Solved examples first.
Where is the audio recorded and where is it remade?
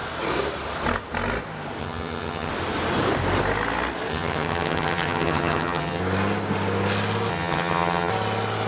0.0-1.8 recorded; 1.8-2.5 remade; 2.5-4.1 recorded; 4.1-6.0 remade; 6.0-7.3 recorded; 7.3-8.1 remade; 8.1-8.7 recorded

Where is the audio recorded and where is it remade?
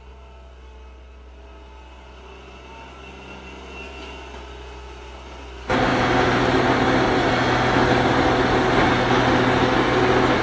0.0-10.4 recorded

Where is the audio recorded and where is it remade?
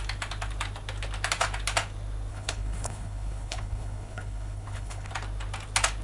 0.0-2.3 recorded; 2.3-5.1 remade; 5.1-6.0 recorded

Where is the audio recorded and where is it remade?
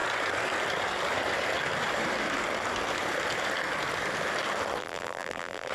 0.0-4.8 recorded; 4.8-5.7 remade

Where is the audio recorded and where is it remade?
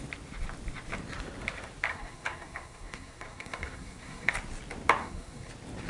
0.0-1.9 recorded; 1.9-4.3 remade; 4.3-5.0 recorded; 5.0-5.5 remade; 5.5-5.9 recorded